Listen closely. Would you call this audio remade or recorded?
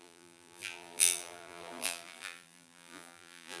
remade